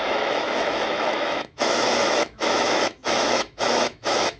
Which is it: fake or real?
fake